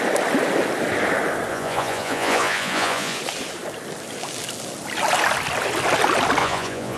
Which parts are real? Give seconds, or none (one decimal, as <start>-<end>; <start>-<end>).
0.0-1.5; 3.2-6.4